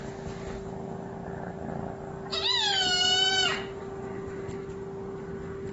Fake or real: real